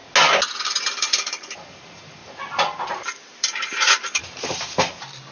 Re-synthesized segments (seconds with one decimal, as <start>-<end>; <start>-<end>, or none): 0.6-2.2; 2.9-5.3